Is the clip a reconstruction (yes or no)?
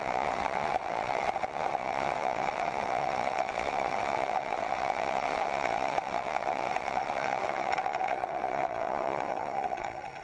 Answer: yes